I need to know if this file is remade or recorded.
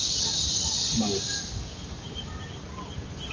recorded